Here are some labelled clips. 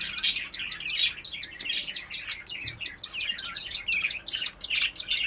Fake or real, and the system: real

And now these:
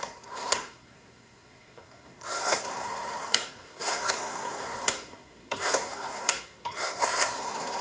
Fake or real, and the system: fake, codec, SNAC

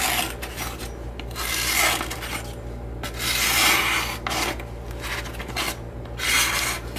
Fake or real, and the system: real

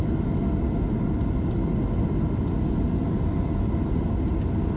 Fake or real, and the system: real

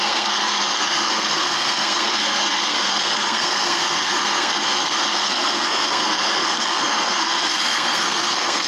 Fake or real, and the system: fake, codec, SNAC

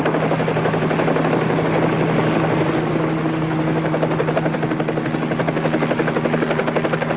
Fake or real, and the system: real